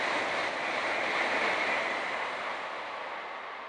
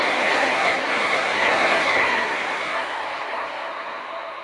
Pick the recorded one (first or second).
first